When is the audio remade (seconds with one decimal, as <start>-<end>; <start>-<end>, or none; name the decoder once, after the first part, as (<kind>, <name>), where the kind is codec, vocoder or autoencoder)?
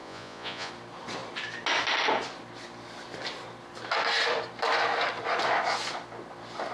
0.0-0.7 (vocoder, Vocos)